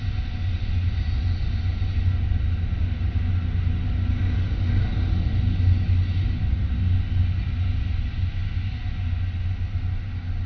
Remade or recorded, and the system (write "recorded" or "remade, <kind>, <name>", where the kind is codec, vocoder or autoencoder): recorded